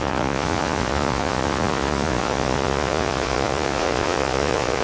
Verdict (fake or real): fake